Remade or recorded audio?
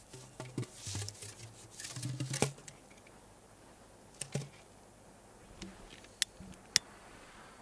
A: recorded